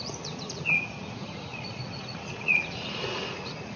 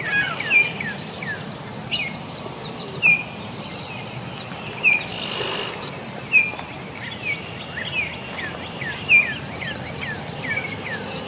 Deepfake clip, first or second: first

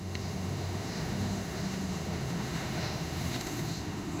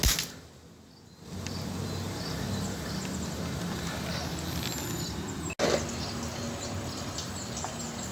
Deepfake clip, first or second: first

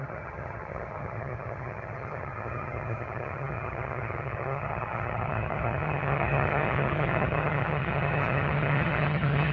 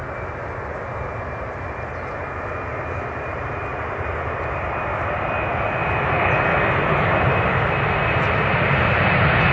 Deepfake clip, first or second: first